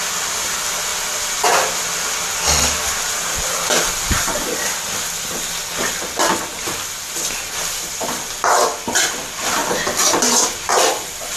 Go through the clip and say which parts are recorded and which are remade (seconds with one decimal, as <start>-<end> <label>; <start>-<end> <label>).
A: 0.0-11.4 recorded